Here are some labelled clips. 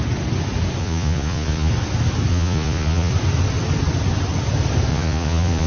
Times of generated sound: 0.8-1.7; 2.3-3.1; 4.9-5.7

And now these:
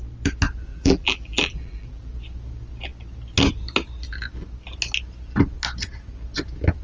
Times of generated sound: 0.7-2.1

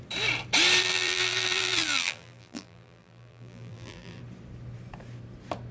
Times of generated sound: 0.8-4.2

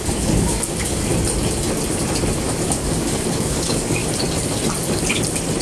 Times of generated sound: 0.0-1.1; 2.4-4.0

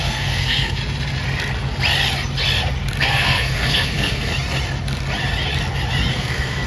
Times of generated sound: 0.0-0.8; 3.0-4.3; 6.1-6.7